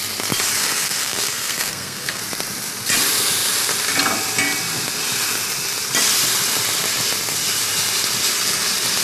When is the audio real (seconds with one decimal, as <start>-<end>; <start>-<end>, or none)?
0.0-0.6; 2.2-9.0